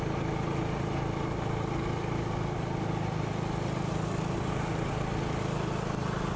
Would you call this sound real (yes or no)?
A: yes